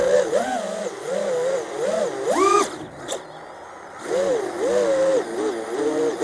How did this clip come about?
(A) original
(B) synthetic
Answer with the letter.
A